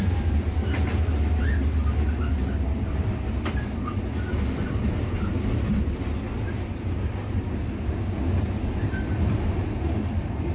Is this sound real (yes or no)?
yes